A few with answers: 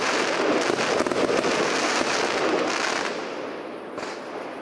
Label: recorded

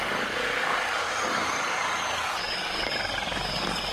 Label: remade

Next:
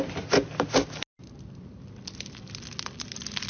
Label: recorded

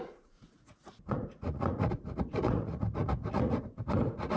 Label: remade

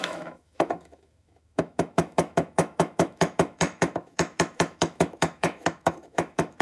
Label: remade